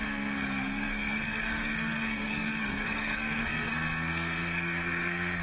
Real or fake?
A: fake